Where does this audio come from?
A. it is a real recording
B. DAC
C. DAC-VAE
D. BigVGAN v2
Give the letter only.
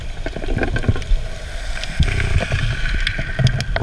A